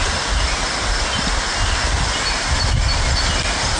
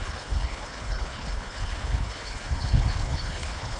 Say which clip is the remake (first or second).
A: second